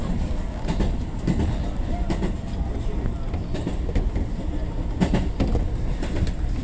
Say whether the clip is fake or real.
real